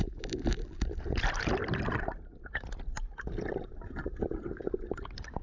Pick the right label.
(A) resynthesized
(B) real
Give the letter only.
B